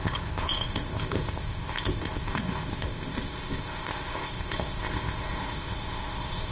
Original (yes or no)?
no